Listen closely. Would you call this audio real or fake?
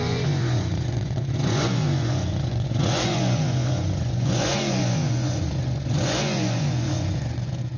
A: fake